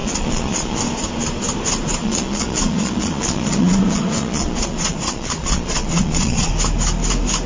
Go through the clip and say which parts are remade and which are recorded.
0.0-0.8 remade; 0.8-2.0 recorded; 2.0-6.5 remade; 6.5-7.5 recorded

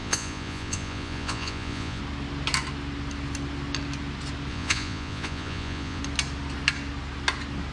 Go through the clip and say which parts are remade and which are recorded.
0.0-2.0 remade; 2.0-4.5 recorded; 4.5-6.0 remade; 6.0-7.7 recorded

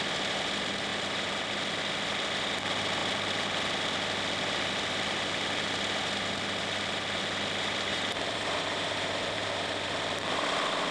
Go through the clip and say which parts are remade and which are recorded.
0.0-7.9 recorded; 7.9-9.5 remade; 9.5-10.9 recorded

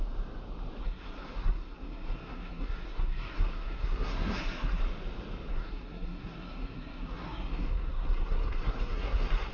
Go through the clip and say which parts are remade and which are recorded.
0.0-0.8 recorded; 0.8-4.8 remade; 4.8-5.5 recorded; 5.5-9.5 remade